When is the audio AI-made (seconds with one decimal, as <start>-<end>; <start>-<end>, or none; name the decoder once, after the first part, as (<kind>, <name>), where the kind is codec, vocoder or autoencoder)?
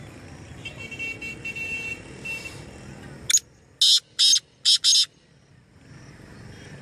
none